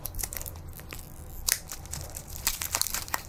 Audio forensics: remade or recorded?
recorded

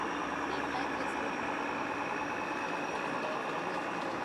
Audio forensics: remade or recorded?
recorded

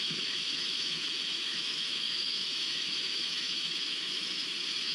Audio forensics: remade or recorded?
remade